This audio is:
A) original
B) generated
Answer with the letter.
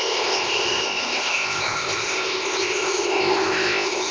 B